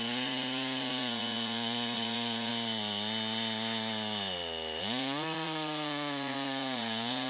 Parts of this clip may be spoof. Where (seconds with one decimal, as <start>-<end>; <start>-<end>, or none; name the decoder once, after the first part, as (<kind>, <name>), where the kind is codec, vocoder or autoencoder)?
0.0-2.5 (vocoder, Vocos); 4.8-7.3